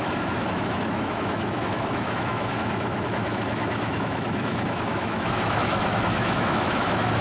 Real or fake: fake